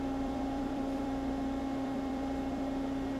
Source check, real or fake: fake